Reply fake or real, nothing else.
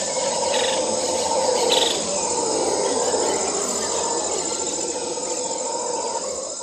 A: real